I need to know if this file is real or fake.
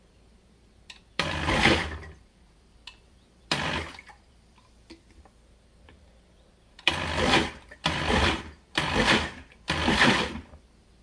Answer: fake